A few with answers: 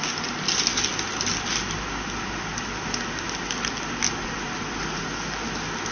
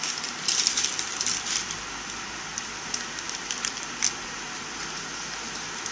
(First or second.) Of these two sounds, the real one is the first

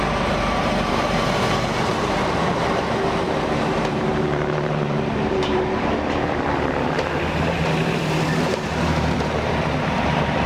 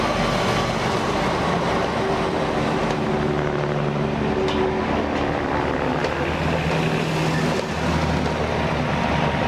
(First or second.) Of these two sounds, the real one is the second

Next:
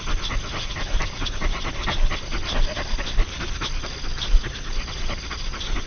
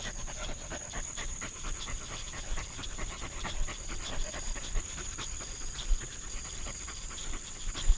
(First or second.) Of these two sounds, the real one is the first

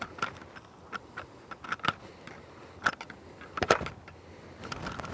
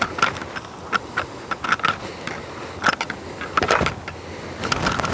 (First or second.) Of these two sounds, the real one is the second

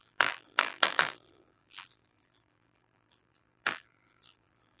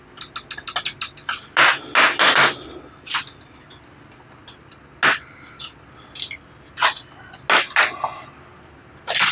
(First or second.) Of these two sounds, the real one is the second